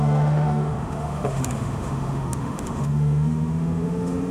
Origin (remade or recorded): remade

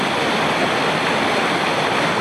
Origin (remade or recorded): recorded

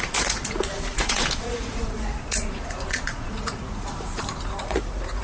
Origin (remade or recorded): remade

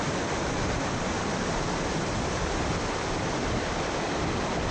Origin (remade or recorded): recorded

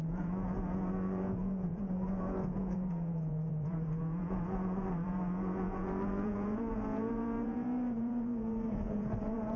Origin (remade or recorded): remade